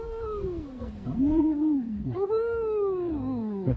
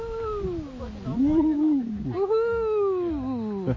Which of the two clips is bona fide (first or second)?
second